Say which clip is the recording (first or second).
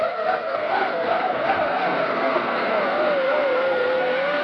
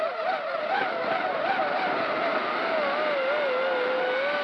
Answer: second